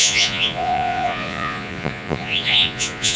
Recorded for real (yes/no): no